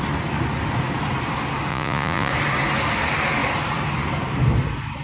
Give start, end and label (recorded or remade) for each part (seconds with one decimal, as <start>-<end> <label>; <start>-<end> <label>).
0.0-1.7 recorded; 1.7-2.3 remade; 2.3-5.0 recorded